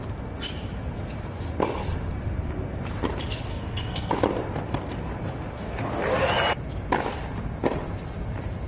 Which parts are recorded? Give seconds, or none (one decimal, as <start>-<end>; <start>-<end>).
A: 0.0-3.5; 4.1-8.7